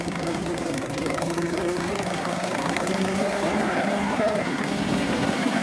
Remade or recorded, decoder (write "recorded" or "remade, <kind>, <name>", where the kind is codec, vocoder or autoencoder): remade, codec, SNAC